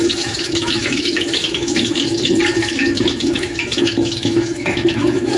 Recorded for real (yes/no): no